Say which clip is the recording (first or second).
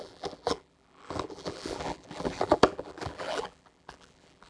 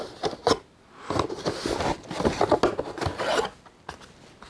second